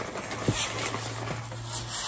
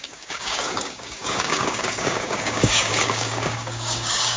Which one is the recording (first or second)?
first